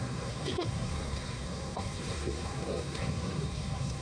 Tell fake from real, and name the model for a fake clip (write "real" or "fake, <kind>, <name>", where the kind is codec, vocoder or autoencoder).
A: fake, codec, SNAC